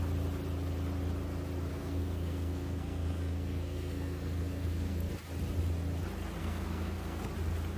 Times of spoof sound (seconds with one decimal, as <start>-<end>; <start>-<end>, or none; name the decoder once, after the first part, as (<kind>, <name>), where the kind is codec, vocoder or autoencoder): 1.7-5.1 (codec, SNAC); 6.4-7.3